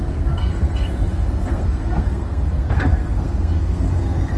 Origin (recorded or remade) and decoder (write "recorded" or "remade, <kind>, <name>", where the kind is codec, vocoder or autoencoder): remade, codec, SNAC